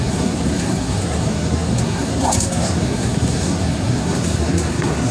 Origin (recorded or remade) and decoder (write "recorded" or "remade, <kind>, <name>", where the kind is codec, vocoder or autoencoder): remade, codec, SNAC